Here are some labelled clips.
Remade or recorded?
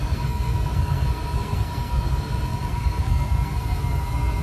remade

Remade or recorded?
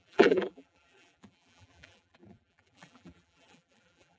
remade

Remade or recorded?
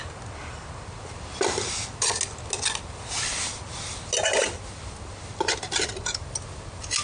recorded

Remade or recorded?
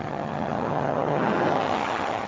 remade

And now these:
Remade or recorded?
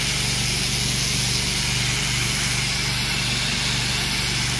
recorded